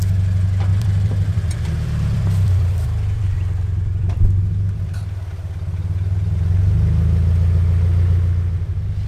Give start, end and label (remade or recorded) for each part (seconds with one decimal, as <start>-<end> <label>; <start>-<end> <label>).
0.0-0.7 recorded; 0.7-4.4 remade; 4.4-9.1 recorded